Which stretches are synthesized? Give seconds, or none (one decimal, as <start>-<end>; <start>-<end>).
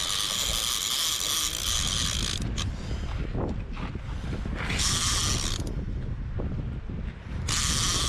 none